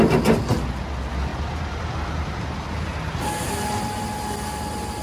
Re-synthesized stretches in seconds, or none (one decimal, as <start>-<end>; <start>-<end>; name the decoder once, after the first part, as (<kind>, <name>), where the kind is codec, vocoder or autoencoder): none